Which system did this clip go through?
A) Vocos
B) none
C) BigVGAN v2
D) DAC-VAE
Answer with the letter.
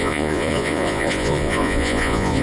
A